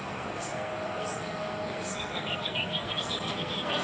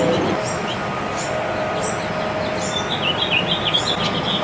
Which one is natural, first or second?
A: second